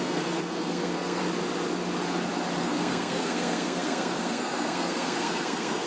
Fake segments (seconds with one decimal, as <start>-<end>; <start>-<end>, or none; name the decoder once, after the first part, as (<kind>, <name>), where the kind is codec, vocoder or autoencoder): 0.0-1.2 (codec, SNAC); 2.6-5.9